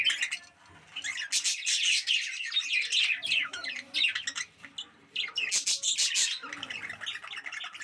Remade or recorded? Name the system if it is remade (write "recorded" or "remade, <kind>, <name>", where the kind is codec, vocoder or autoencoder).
recorded